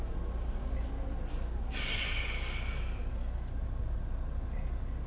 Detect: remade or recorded recorded